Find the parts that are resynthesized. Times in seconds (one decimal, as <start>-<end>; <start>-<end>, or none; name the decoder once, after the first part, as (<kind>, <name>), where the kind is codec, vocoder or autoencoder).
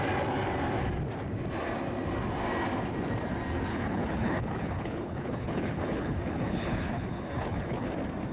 3.7-7.9 (codec, HILCodec)